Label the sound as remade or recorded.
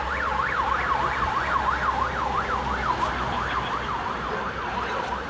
recorded